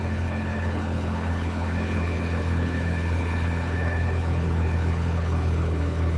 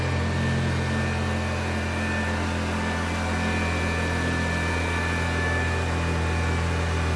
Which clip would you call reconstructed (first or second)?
first